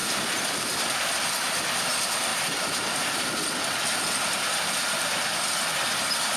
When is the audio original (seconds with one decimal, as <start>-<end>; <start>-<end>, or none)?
1.3-2.3; 5.7-6.4